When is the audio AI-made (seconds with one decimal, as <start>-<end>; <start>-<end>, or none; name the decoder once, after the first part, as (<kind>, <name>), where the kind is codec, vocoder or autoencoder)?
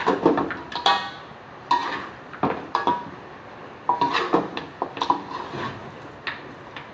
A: 0.0-1.2 (vocoder, BigVGAN v2); 1.8-5.8